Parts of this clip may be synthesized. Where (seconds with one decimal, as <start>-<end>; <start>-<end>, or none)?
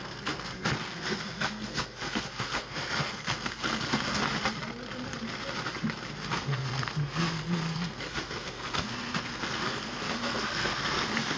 0.0-4.2; 6.3-11.4